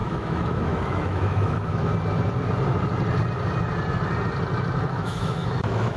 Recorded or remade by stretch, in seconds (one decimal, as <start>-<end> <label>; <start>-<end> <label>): 0.0-1.9 remade; 1.9-4.8 recorded; 4.8-6.0 remade